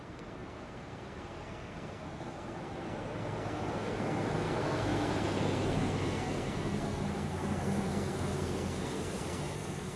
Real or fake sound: fake